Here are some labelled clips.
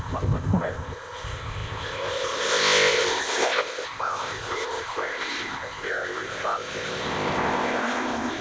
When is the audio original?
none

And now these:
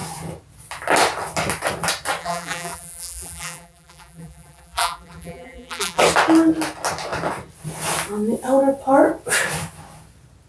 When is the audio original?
0.0-2.2; 6.0-10.5

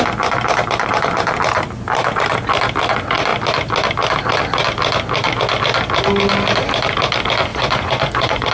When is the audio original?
0.0-7.5

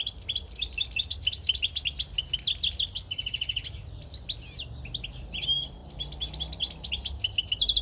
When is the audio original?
0.0-7.8

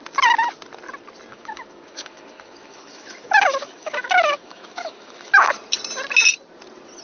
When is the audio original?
0.0-1.3; 5.5-7.0

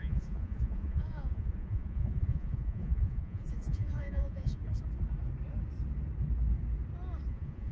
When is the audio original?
4.6-7.3